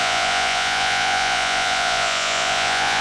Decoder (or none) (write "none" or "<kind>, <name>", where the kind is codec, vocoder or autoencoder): vocoder, Vocos